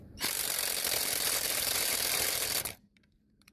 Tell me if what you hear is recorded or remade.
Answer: remade